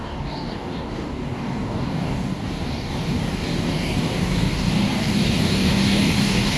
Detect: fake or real fake